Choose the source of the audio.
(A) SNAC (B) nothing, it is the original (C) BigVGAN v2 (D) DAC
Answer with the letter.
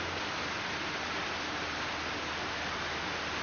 B